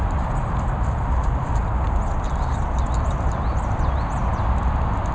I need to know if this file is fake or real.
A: real